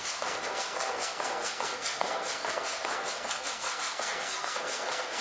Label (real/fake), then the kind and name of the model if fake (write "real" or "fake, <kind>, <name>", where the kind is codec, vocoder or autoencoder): fake, codec, SNAC